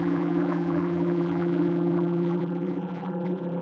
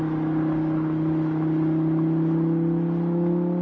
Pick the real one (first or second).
second